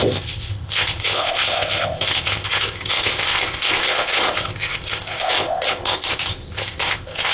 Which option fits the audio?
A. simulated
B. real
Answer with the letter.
A